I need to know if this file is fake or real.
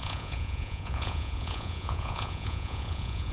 fake